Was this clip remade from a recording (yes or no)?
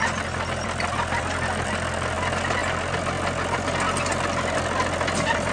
no